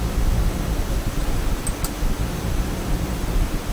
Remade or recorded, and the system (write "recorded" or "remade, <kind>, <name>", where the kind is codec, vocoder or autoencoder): recorded